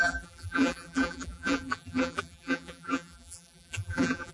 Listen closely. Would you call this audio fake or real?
fake